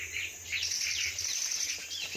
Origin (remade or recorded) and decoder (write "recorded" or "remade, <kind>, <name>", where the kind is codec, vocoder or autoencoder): remade, vocoder, BigVGAN v2